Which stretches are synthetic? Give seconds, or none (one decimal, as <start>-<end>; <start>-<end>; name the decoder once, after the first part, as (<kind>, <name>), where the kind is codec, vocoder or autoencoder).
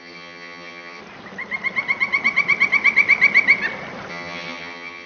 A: 0.0-1.0 (vocoder, HiFi-GAN); 4.1-5.1